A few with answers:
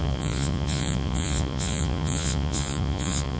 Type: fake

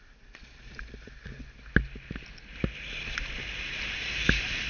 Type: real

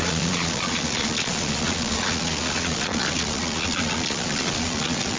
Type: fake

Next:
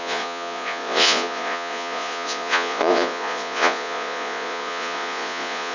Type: fake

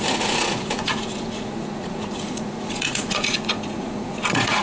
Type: fake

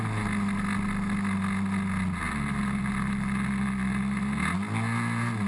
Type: real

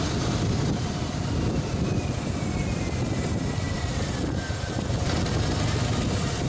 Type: real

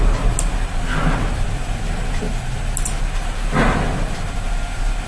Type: real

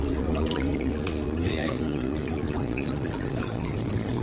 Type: fake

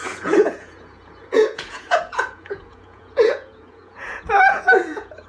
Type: fake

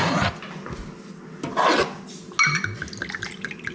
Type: real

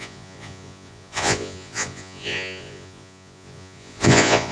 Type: fake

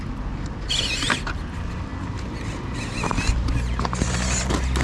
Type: real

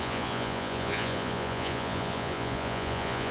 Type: fake